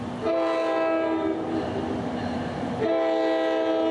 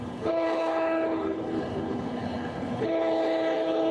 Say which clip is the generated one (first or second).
second